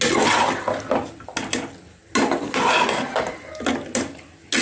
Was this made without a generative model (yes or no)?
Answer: yes